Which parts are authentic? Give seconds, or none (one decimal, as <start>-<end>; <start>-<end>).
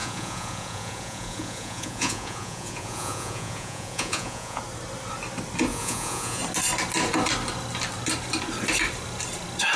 4.6-5.7; 6.4-9.8